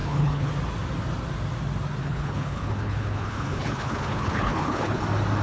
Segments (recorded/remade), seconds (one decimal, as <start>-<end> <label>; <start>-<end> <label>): 0.0-0.5 remade; 0.5-2.0 recorded; 2.0-5.0 remade; 5.0-5.4 recorded